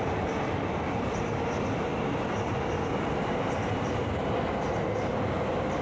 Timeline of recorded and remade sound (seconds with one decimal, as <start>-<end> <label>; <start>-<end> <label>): 0.0-5.8 recorded